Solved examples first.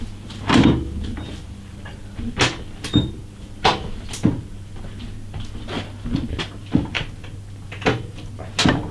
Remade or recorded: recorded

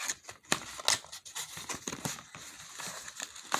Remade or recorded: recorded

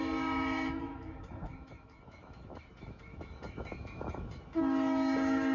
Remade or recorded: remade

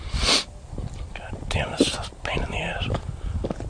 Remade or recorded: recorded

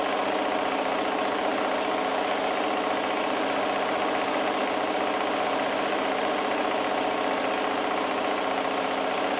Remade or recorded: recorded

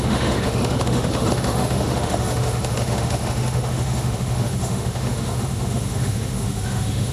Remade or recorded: remade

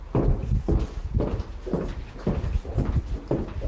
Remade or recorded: recorded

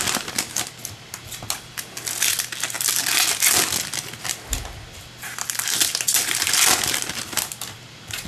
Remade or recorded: recorded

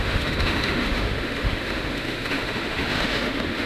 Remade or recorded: remade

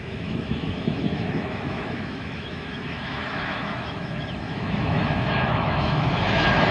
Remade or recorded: remade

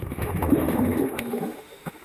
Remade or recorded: remade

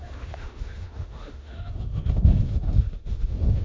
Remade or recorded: remade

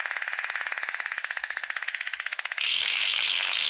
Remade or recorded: remade